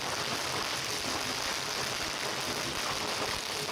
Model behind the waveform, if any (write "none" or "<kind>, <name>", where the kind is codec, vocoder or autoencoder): none